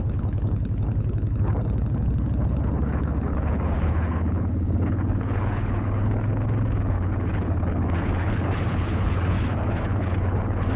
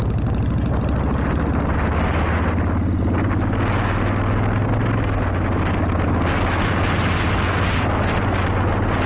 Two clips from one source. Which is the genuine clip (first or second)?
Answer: second